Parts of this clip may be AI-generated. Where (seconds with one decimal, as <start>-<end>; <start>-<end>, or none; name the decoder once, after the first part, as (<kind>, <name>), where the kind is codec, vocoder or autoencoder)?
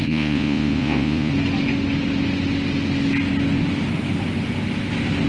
0.0-1.3 (vocoder, Vocos)